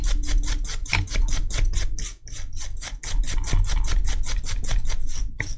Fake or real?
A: real